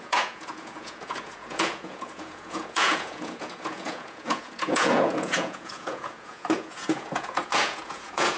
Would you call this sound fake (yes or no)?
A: yes